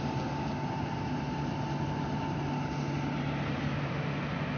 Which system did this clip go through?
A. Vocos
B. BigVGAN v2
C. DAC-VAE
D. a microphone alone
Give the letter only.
D